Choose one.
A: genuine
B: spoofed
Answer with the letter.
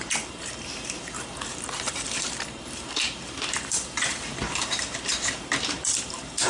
B